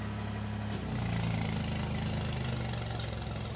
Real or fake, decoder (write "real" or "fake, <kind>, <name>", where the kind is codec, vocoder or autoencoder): real